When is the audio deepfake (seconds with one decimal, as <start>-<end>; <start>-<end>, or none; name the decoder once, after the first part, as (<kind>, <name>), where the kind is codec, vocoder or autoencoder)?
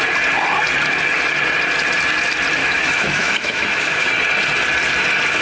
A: 2.6-4.1 (autoencoder, DAC-VAE)